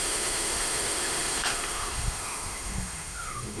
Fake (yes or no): yes